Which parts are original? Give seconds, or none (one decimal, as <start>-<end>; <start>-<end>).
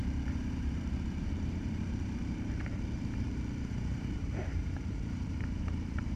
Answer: none